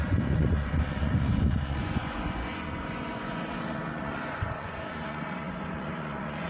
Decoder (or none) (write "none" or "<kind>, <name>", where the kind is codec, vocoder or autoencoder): vocoder, Vocos